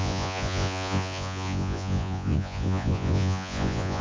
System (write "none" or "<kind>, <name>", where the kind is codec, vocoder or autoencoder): vocoder, Vocos